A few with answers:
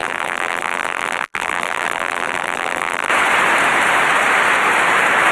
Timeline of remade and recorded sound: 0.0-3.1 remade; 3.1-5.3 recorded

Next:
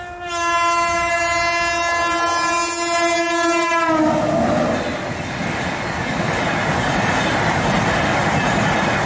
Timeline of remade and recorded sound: 0.0-8.2 recorded; 8.2-8.7 remade; 8.7-9.1 recorded

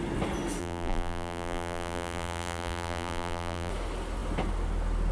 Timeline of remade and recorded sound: 0.0-0.6 recorded; 0.6-3.7 remade; 3.7-5.1 recorded

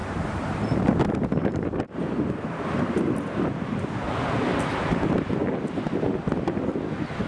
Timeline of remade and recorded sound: 0.0-0.8 remade; 0.8-1.4 recorded; 1.4-2.0 remade; 2.0-4.7 recorded; 4.7-5.4 remade; 5.4-7.3 recorded

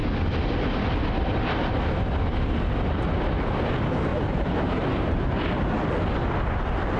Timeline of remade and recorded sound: 0.0-4.1 recorded; 4.1-5.4 remade; 5.4-7.0 recorded